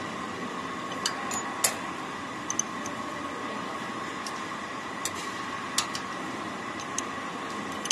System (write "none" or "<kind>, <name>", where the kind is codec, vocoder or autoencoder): none